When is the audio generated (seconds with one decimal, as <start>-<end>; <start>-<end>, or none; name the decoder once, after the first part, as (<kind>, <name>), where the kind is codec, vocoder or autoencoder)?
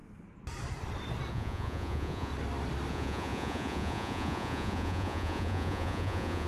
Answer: 1.3-2.3 (vocoder, Vocos); 2.9-6.5